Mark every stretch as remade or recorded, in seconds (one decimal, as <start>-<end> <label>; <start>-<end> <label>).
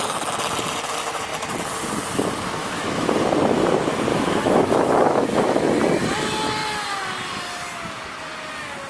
0.0-2.6 recorded; 2.6-3.2 remade; 3.2-4.1 recorded; 4.1-5.8 remade; 5.8-8.9 recorded